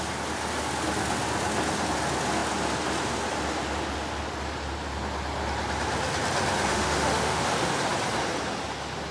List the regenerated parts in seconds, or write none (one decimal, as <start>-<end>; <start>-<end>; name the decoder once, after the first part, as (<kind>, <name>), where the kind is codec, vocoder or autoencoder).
6.7-7.4 (autoencoder, DAC-VAE)